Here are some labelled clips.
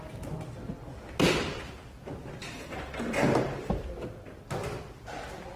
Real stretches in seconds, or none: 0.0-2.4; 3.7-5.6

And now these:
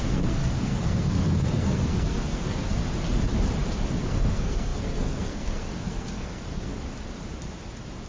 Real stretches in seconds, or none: 2.8-4.0; 6.7-8.1

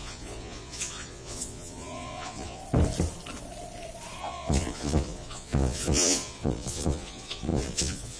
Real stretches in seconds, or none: 2.6-4.2

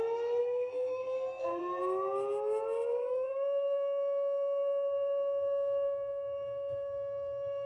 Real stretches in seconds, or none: 0.0-0.4; 1.6-3.0

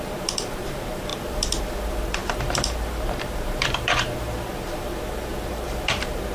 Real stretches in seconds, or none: none

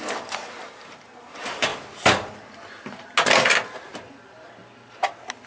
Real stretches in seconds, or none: 0.0-5.5